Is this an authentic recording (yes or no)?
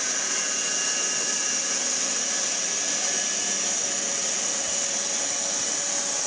yes